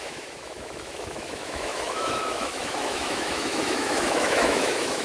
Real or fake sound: fake